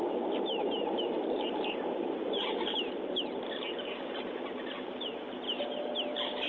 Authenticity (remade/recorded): remade